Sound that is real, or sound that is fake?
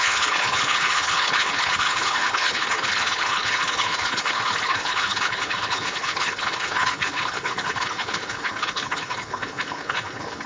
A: fake